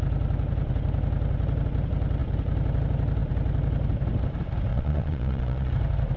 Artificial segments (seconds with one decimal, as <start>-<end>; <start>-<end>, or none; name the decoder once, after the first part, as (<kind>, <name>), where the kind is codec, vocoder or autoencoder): 4.7-5.7 (vocoder, Vocos)